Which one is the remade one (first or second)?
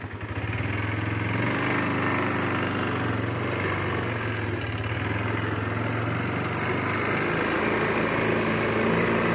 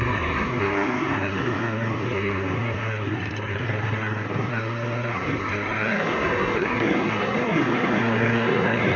second